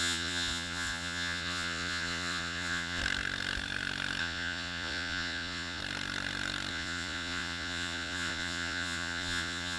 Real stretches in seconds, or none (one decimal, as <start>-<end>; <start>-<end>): 3.0-4.2; 5.8-6.7